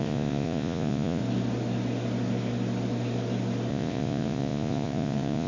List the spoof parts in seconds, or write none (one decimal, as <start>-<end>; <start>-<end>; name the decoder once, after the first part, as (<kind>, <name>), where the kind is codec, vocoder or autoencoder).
0.0-1.2 (vocoder, Vocos); 3.7-5.5